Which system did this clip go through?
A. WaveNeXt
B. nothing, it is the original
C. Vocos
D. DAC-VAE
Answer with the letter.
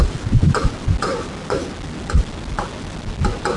B